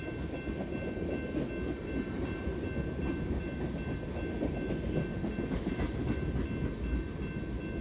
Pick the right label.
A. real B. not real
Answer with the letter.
A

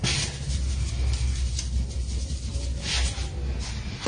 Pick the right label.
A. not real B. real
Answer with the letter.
B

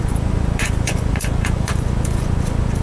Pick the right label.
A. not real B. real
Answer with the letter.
A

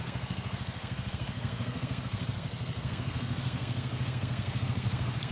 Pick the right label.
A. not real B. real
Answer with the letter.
A